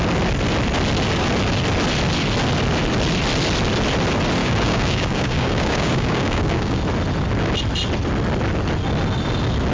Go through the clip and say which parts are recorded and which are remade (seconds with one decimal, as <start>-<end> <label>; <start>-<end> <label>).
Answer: 0.0-4.4 recorded; 4.4-6.8 remade; 6.8-9.7 recorded